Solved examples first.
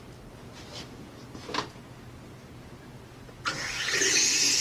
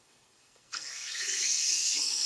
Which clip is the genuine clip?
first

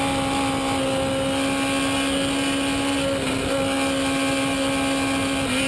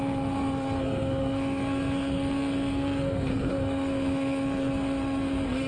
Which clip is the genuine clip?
first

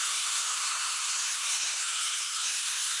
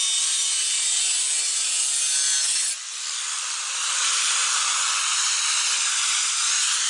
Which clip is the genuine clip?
second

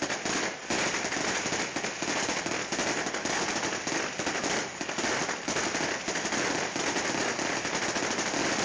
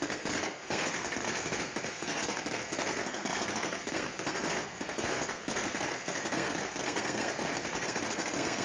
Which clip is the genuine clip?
first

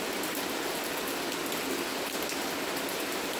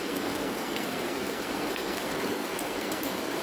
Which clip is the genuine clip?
first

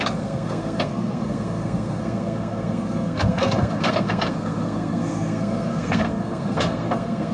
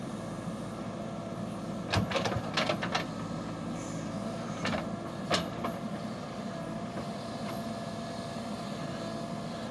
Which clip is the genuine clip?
second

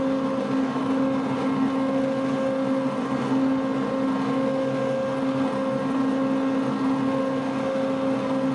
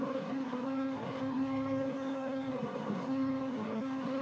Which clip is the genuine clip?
first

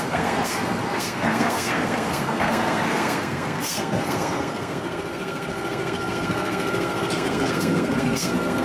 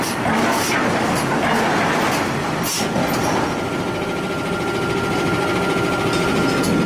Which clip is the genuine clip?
second